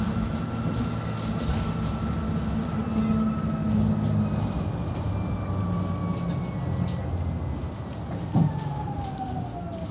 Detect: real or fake real